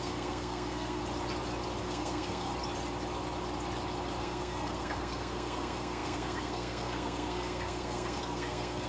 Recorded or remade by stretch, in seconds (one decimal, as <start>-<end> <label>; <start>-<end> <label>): 0.0-1.0 remade; 1.0-1.8 recorded; 1.8-2.5 remade; 2.5-4.2 recorded; 4.2-8.9 remade